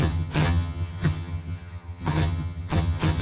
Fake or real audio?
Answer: fake